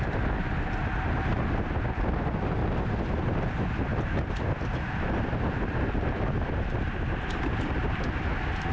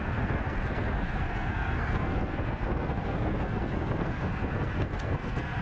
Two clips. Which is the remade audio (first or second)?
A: second